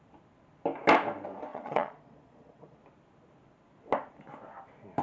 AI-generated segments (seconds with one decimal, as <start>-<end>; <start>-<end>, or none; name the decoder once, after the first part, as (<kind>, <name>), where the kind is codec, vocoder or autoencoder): 1.5-2.8 (vocoder, Vocos)